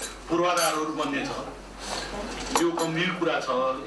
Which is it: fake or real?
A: real